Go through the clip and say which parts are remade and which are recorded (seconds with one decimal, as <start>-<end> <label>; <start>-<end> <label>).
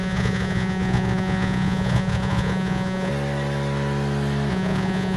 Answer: 0.0-3.1 remade; 3.1-4.5 recorded; 4.5-5.2 remade